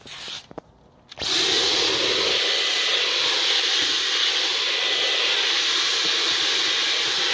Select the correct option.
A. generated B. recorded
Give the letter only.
B